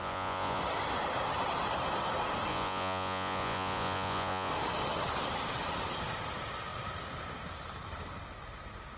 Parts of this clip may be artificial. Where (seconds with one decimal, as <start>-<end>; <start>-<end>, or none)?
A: 0.0-0.6; 2.5-4.5

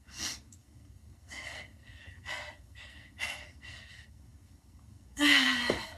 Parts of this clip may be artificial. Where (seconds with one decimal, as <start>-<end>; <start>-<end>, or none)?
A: 0.0-6.0